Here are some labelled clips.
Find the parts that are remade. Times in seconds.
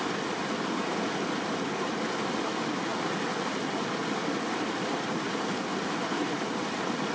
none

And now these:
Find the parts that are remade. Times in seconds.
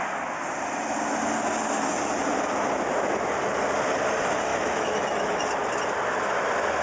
4.5-5.5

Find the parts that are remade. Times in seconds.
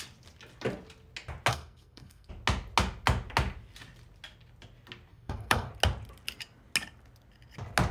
1.5-2.3; 5.1-5.7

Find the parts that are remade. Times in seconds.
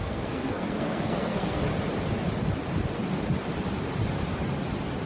0.0-1.7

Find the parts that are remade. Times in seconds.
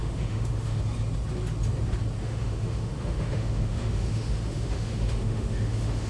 0.0-0.8; 2.2-6.1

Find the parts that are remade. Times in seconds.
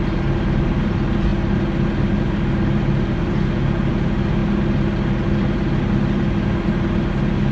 none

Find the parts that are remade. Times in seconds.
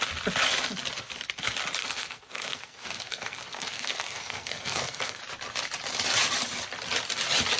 1.8-5.2